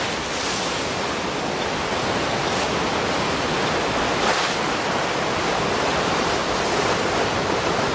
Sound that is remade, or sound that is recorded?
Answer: remade